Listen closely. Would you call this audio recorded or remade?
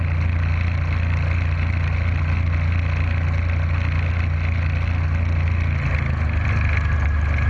recorded